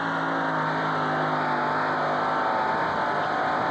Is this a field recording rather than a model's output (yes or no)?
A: yes